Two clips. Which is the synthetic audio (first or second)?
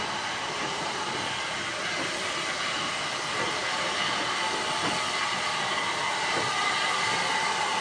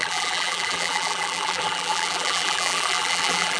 second